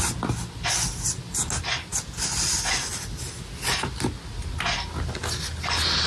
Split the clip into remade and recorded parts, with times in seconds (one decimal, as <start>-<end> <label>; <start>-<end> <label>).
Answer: 0.0-6.1 recorded